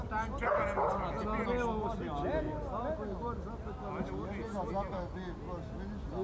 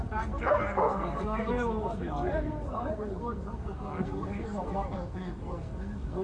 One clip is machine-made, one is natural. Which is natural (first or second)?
first